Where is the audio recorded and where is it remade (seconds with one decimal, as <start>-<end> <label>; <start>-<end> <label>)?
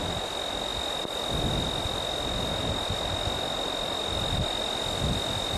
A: 0.0-5.6 recorded